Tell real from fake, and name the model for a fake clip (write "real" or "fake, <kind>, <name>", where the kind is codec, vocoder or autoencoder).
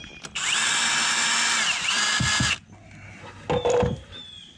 real